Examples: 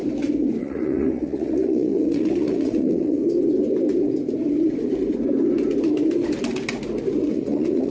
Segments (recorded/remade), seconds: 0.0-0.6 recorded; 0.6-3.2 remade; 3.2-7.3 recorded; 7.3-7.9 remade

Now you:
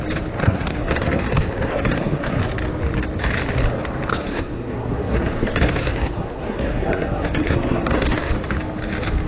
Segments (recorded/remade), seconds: 0.0-0.4 recorded; 0.4-2.4 remade; 2.4-4.1 recorded; 4.1-8.3 remade; 8.3-9.3 recorded

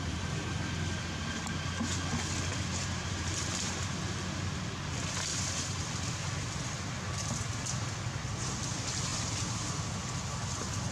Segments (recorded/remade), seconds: 0.0-2.5 recorded; 2.5-4.0 remade; 4.0-5.3 recorded; 5.3-5.8 remade; 5.8-9.1 recorded; 9.1-9.9 remade; 9.9-10.9 recorded